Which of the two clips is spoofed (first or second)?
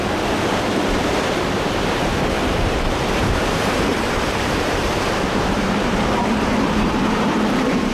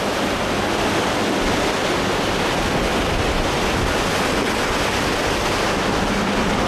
first